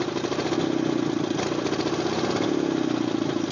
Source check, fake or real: real